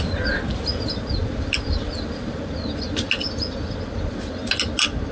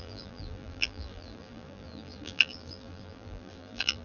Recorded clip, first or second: first